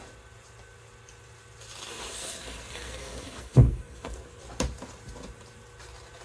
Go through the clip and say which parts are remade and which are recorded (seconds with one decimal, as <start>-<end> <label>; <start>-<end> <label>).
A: 0.0-1.9 recorded; 1.9-4.4 remade; 4.4-6.2 recorded

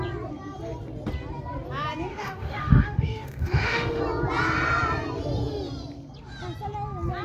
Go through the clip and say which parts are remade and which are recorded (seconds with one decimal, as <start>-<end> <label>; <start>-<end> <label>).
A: 0.0-2.1 recorded; 2.1-4.0 remade; 4.0-7.2 recorded

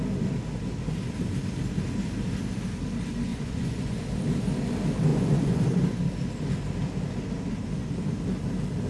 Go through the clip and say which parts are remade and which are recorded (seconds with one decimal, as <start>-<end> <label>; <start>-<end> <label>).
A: 0.0-3.3 recorded; 3.3-4.0 remade; 4.0-5.1 recorded; 5.1-5.6 remade; 5.6-8.9 recorded

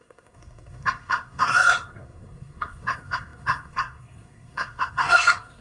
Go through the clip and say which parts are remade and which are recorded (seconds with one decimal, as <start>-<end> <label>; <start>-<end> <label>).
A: 0.0-5.6 remade

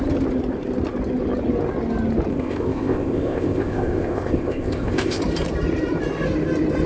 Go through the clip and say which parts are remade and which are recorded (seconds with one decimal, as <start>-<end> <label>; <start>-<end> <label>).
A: 0.0-2.3 recorded; 2.3-5.2 remade; 5.2-6.9 recorded

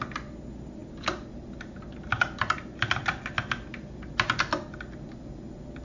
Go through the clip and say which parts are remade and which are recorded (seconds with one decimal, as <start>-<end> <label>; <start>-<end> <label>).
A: 0.0-5.8 recorded

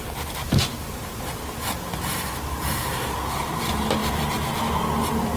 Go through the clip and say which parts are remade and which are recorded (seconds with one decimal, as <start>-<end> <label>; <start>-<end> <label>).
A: 0.0-0.4 recorded; 0.4-1.2 remade; 1.2-4.0 recorded; 4.0-4.6 remade; 4.6-5.4 recorded